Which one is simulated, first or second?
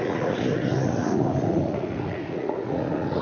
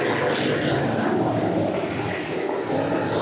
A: first